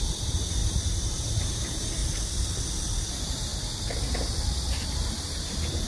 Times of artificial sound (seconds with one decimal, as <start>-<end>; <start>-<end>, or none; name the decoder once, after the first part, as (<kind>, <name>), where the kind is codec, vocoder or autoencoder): 0.0-2.0 (vocoder, BigVGAN v2); 3.1-3.5; 4.9-5.9